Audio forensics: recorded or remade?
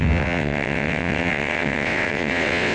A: remade